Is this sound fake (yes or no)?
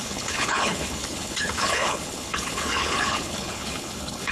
yes